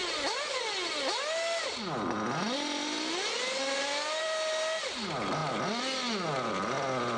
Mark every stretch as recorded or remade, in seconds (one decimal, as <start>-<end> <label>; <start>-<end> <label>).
0.0-7.2 recorded